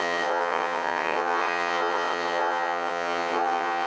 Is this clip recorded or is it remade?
remade